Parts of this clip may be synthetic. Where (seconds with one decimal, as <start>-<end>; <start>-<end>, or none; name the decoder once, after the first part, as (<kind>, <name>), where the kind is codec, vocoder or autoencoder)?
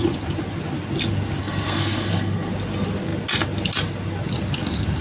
1.4-2.5 (codec, SNAC)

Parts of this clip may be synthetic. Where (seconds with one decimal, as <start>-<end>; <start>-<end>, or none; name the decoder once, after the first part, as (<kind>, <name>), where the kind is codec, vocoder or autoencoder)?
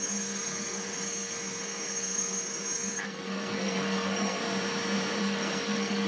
0.0-4.4 (codec, SNAC); 5.2-6.1